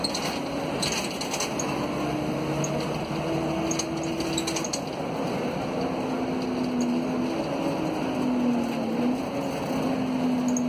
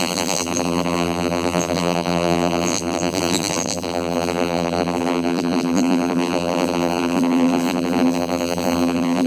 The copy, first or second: second